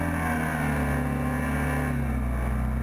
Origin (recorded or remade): recorded